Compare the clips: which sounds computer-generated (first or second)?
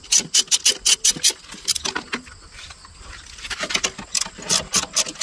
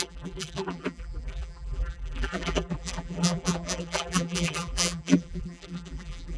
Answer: second